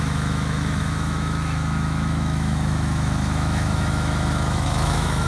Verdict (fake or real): fake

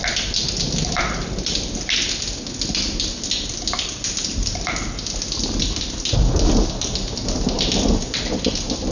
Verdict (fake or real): real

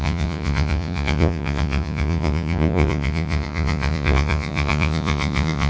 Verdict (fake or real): fake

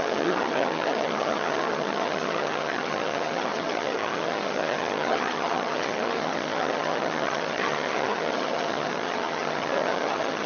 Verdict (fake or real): fake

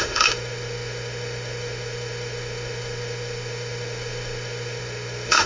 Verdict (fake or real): fake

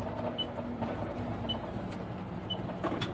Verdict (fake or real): real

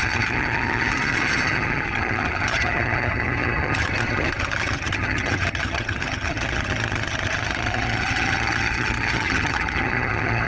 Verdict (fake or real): fake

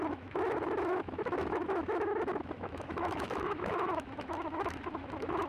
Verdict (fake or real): fake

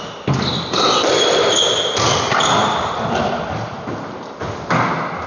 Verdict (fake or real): real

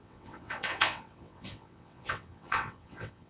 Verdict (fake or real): fake